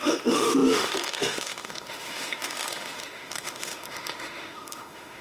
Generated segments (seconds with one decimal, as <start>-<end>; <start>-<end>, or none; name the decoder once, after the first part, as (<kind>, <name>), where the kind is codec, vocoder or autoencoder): 0.0-5.2 (autoencoder, DAC-VAE)